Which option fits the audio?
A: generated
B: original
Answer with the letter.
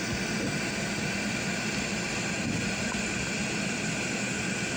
B